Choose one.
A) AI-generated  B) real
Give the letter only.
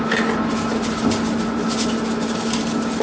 B